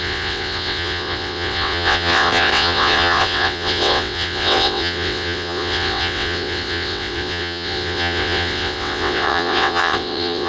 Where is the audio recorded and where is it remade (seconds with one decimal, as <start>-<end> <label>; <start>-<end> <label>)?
0.0-10.5 remade